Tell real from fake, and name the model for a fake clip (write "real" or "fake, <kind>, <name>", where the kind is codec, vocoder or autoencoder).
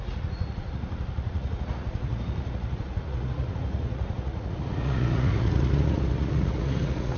fake, vocoder, Vocos